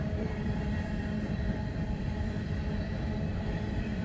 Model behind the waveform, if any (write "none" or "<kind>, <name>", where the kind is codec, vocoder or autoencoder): vocoder, BigVGAN v2